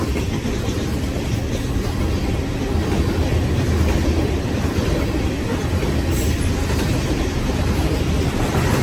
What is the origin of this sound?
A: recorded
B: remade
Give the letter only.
A